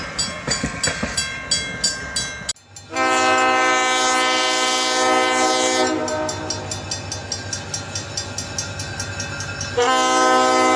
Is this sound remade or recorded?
recorded